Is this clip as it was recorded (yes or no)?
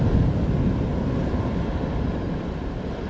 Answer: yes